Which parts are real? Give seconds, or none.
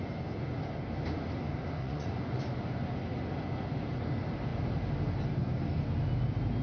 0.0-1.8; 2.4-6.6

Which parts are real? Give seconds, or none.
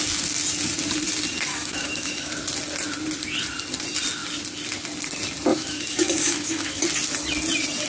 0.0-1.5; 2.3-5.5; 6.8-7.9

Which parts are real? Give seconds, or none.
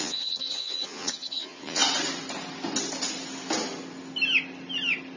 1.8-5.2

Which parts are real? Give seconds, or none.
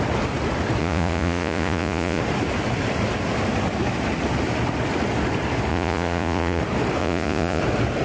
0.0-0.8; 2.2-5.7; 6.6-7.0; 7.6-8.0